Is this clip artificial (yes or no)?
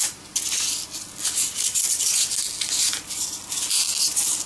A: no